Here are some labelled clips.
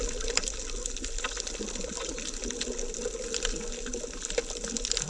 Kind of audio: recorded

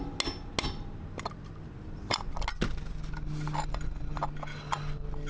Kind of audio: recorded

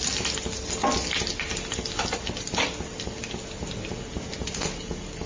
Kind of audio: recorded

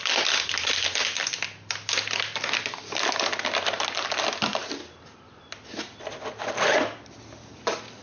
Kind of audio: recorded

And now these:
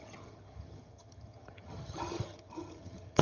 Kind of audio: remade